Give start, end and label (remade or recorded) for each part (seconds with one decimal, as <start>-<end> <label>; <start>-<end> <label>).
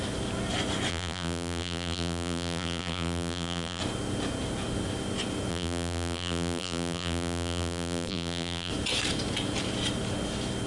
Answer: 0.0-0.9 recorded; 0.9-3.8 remade; 3.8-5.5 recorded; 5.5-8.7 remade; 8.7-10.7 recorded